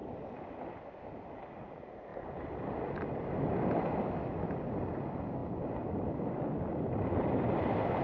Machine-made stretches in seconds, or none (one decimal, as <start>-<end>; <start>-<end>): none